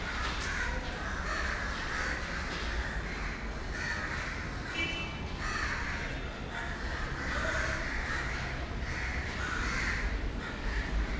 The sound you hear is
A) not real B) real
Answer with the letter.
A